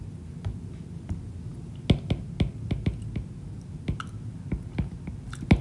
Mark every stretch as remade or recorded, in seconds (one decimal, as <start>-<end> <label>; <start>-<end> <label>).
0.0-5.6 recorded

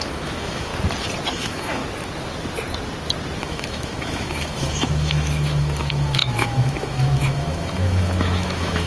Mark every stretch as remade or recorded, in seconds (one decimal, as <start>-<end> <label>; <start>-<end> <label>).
0.0-0.7 remade; 0.7-1.3 recorded; 1.3-1.8 remade; 1.8-3.4 recorded; 3.4-8.9 remade

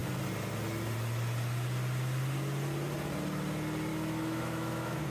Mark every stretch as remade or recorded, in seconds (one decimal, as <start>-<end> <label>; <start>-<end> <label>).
0.0-3.9 recorded; 3.9-5.1 remade

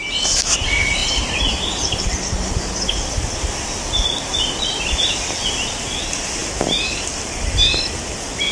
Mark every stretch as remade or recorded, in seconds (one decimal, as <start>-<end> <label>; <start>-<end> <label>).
0.0-8.5 recorded

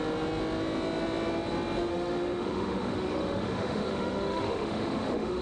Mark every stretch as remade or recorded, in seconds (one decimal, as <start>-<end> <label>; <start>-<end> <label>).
0.0-1.9 recorded; 1.9-5.4 remade